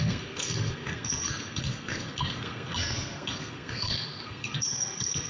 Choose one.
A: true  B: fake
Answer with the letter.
B